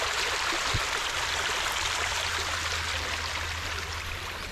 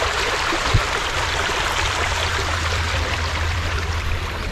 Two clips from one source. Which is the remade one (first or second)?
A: second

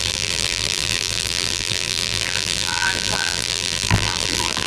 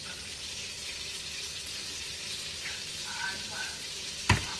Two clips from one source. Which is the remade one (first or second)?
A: first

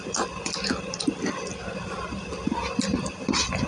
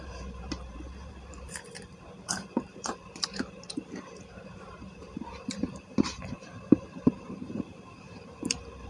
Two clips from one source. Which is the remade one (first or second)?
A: second